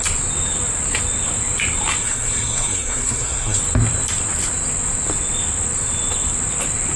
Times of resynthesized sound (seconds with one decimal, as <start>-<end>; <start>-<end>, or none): 2.0-3.6